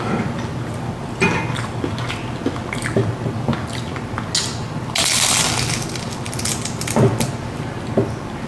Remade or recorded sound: recorded